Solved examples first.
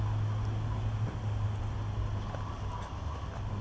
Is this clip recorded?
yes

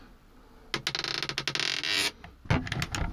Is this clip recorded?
yes